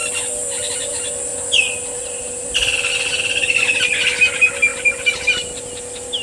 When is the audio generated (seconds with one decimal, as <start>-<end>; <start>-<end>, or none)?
none